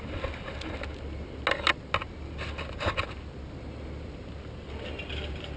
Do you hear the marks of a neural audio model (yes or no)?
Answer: no